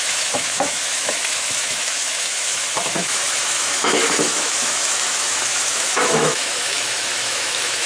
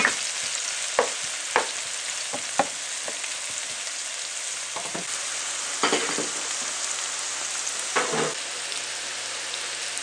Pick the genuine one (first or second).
second